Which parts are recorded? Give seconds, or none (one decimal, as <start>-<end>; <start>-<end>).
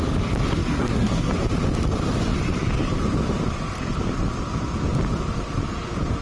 0.0-0.5; 1.3-6.2